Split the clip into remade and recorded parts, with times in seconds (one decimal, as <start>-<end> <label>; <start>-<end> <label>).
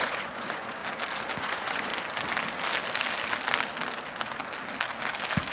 0.0-0.8 remade; 0.8-1.4 recorded; 1.4-1.9 remade; 1.9-5.5 recorded